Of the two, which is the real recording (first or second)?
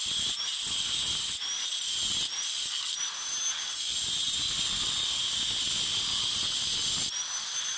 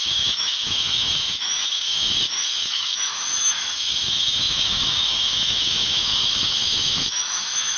first